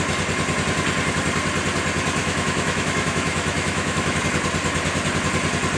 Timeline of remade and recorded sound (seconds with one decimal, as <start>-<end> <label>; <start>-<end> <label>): 0.0-2.2 recorded; 2.2-4.2 remade; 4.2-5.8 recorded